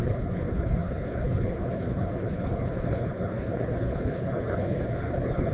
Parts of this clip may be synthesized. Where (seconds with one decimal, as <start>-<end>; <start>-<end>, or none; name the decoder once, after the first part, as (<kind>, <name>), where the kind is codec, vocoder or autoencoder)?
0.0-5.5 (codec, HILCodec)